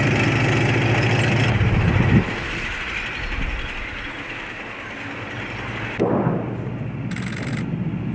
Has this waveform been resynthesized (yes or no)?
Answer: no